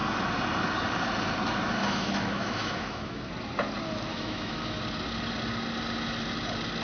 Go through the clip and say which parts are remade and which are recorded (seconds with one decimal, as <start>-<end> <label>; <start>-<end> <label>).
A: 0.0-1.8 recorded; 1.8-3.3 remade; 3.3-4.1 recorded; 4.1-4.8 remade; 4.8-6.8 recorded